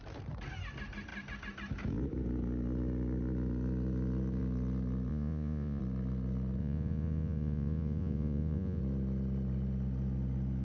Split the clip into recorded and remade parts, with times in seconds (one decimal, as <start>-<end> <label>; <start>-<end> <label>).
0.0-5.1 recorded; 5.1-5.8 remade; 5.8-6.6 recorded; 6.6-8.8 remade; 8.8-10.6 recorded